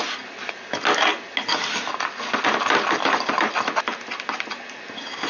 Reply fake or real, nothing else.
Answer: real